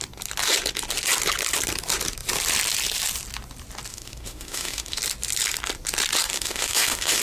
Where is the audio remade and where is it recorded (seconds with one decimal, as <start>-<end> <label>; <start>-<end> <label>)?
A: 0.0-3.9 recorded; 3.9-5.0 remade; 5.0-6.3 recorded; 6.3-7.2 remade